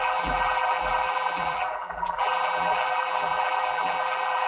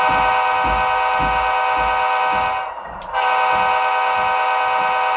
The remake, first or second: first